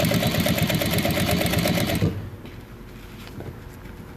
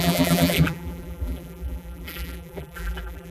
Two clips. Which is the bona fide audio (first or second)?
first